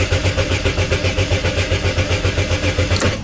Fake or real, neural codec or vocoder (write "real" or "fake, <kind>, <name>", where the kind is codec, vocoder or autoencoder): real